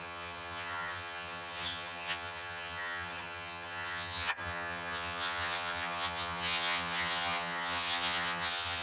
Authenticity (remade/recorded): remade